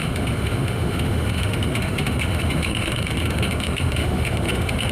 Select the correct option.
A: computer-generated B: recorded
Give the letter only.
A